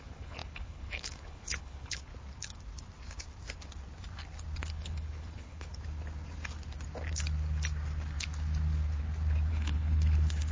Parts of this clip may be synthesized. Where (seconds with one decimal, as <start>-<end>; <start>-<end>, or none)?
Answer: 0.0-2.1; 4.7-5.7; 9.5-10.5